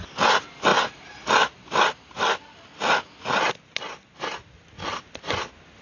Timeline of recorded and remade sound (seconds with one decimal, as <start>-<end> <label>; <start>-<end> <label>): 0.0-5.8 recorded